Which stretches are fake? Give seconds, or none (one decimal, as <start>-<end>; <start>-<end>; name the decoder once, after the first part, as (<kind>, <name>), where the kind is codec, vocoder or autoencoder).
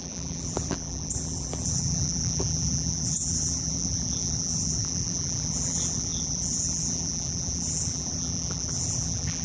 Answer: 0.0-9.4 (vocoder, BigVGAN v2)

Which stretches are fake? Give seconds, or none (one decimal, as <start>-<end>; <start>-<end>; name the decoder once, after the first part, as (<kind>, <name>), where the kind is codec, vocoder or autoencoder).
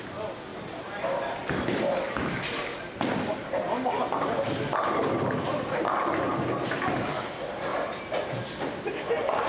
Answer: 0.5-1.9 (vocoder, BigVGAN v2); 7.7-9.5